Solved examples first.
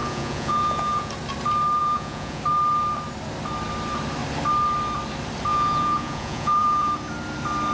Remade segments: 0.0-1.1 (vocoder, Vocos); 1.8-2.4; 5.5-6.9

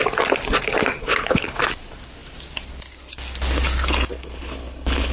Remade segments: 1.0-1.6 (codec, HILCodec); 4.2-5.1

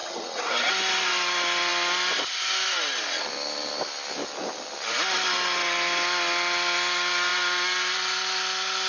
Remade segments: 0.0-0.7 (vocoder, HiFi-GAN)

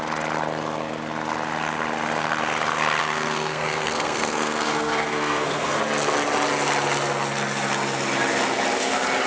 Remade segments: 3.0-5.8 (codec, SNAC)

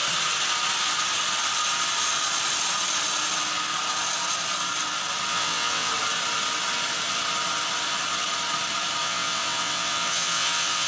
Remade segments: 5.3-5.9 (vocoder, WaveNeXt); 9.0-10.9

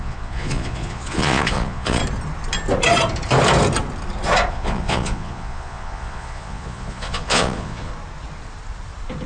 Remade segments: 0.0-2.0 (vocoder, Vocos); 4.5-7.9

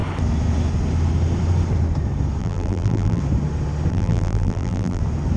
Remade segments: 2.4-3.2 (vocoder, BigVGAN v2); 3.9-5.0